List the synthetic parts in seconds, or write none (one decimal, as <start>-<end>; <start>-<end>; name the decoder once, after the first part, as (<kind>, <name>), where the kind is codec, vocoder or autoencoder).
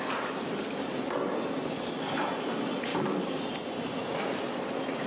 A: 2.9-3.4 (codec, DAC)